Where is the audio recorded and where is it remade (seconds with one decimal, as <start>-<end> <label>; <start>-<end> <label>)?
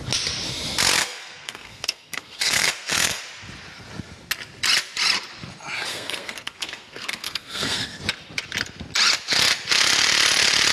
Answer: 0.0-1.0 recorded; 1.0-3.2 remade; 3.2-5.9 recorded; 5.9-8.0 remade; 8.0-10.7 recorded